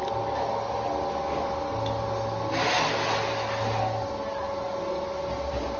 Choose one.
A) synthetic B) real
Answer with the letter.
B